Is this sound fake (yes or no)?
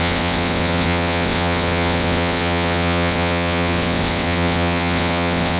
yes